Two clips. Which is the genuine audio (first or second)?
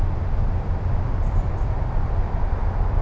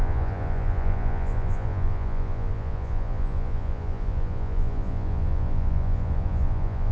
first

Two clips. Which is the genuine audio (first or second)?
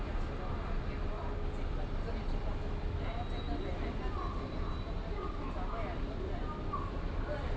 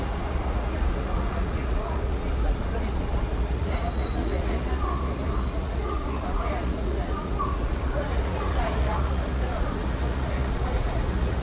first